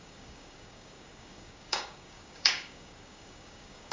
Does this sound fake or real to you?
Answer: fake